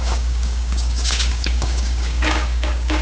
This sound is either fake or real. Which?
fake